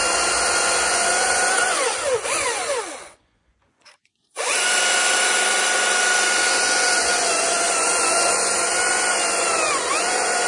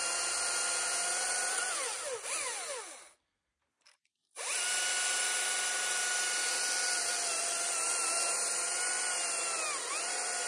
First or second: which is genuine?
second